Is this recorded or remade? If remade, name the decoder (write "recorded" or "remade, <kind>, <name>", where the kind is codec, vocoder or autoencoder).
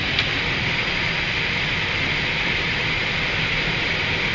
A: remade, vocoder, BigVGAN v2